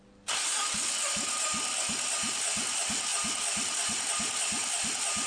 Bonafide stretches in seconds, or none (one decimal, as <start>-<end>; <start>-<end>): 0.0-5.3